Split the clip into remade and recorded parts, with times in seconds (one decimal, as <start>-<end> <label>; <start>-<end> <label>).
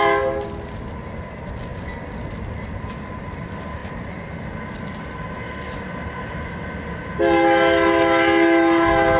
0.0-9.2 recorded